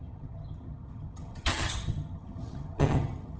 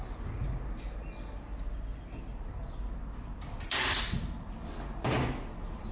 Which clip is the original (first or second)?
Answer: second